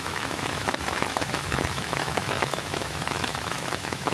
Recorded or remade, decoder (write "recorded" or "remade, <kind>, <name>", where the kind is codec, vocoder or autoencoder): remade, autoencoder, DAC-VAE